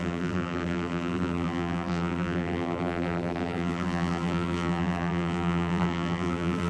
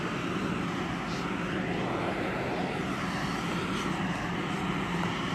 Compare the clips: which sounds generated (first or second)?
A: first